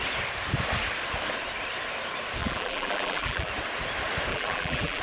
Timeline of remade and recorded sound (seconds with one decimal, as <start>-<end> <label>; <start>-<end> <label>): 0.0-2.4 recorded; 2.4-3.5 remade; 3.5-4.3 recorded; 4.3-5.0 remade